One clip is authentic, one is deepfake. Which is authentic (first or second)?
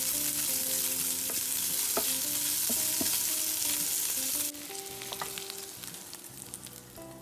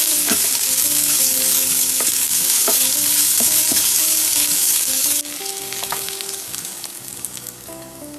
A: first